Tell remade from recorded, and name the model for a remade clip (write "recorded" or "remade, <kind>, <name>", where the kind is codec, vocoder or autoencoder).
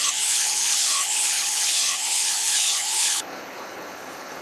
remade, codec, HILCodec